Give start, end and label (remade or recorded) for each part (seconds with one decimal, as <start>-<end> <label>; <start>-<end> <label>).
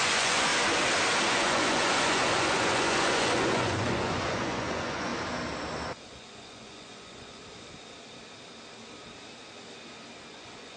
0.0-0.5 remade; 0.5-1.3 recorded; 1.3-5.1 remade; 5.1-6.1 recorded; 6.1-7.4 remade; 7.4-10.3 recorded; 10.3-10.8 remade